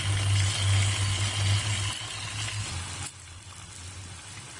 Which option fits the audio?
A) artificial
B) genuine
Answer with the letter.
B